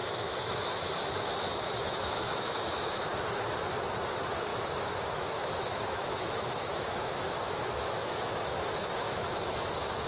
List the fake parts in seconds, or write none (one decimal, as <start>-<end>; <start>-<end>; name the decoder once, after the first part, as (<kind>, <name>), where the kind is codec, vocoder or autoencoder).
0.0-3.1 (autoencoder, DAC-VAE); 4.0-10.1